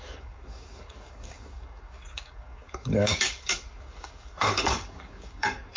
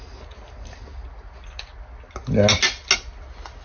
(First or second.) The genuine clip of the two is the second